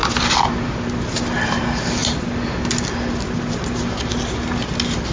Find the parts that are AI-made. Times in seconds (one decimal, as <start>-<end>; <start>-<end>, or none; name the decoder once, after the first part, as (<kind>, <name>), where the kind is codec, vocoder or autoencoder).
none

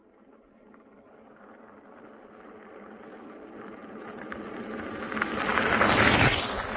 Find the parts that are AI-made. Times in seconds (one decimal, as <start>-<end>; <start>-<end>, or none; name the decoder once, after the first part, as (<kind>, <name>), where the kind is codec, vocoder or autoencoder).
none

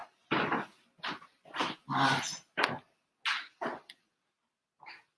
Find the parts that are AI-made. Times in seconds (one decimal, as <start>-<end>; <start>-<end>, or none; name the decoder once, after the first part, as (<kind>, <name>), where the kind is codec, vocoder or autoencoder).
none

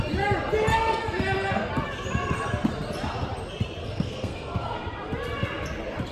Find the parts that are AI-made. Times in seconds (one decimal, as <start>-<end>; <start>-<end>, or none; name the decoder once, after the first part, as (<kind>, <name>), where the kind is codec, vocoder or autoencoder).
0.7-1.7 (codec, SNAC); 3.8-4.8